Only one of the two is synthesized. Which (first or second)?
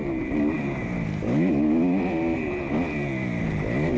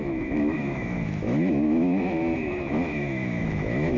second